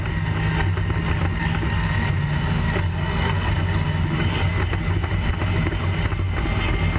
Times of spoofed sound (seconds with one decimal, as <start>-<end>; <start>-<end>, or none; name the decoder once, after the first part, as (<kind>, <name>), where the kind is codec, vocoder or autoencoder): 2.9-3.5 (codec, SNAC)